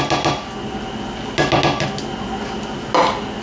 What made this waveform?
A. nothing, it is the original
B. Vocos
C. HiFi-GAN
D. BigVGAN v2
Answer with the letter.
A